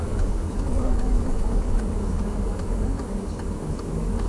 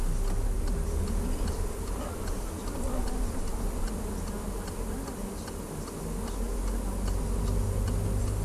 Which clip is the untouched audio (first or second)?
second